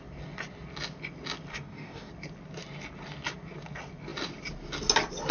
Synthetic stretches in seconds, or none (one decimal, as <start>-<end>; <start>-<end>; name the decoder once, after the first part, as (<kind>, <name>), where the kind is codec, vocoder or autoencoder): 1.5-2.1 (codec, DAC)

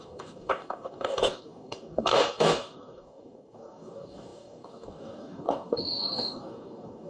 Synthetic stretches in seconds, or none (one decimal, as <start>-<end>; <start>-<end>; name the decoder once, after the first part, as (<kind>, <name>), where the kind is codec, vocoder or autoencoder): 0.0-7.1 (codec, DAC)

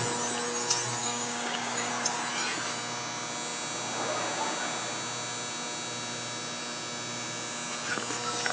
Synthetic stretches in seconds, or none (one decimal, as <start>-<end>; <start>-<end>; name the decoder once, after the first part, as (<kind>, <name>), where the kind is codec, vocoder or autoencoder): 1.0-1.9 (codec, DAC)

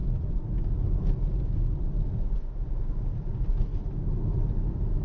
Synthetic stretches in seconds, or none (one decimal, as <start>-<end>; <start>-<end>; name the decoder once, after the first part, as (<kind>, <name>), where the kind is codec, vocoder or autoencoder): none